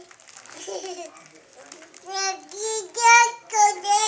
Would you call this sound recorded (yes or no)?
yes